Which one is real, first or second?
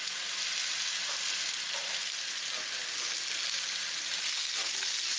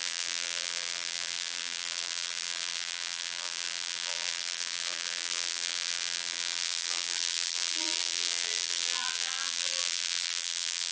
first